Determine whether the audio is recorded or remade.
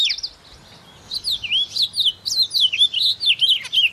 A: recorded